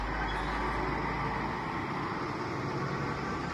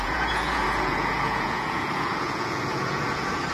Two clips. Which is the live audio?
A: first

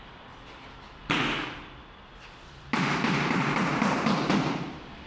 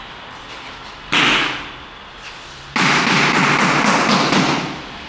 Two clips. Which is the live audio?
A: second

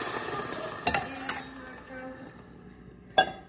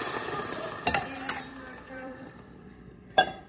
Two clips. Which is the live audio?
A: first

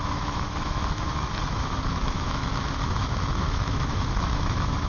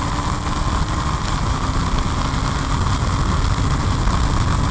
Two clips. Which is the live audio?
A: second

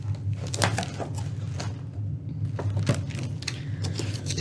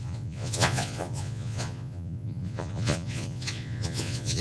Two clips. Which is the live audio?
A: first